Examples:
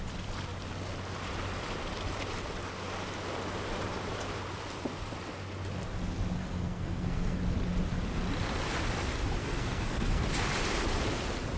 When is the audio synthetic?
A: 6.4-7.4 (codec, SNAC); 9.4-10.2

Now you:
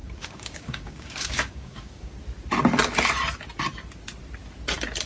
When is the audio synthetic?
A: 0.0-2.1 (codec, DAC)